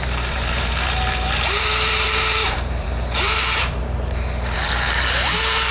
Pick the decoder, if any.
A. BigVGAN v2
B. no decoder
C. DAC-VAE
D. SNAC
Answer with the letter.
A